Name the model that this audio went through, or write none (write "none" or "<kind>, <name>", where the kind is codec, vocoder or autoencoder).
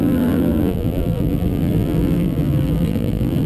vocoder, BigVGAN v2